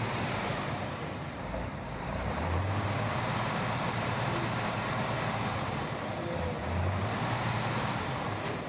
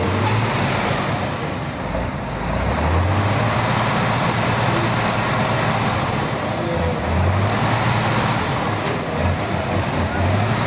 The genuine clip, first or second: second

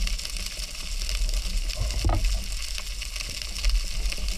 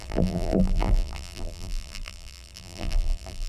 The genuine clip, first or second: first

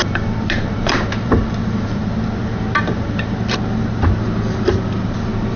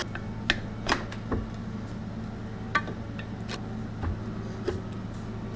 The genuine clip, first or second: second